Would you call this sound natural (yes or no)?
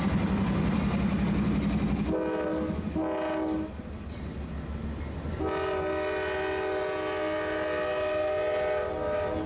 yes